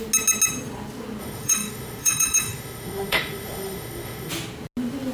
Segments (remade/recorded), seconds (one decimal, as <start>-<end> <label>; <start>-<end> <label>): 0.0-1.2 recorded; 1.2-4.3 remade; 4.3-5.1 recorded